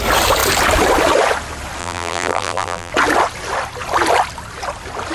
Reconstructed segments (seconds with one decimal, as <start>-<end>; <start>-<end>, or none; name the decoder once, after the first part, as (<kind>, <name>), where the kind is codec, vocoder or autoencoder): 1.8-2.9 (vocoder, BigVGAN v2)